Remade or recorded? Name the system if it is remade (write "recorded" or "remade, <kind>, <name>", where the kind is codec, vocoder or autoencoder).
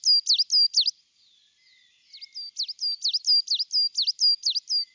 recorded